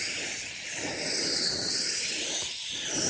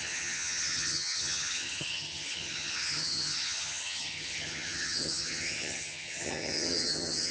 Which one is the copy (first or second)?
second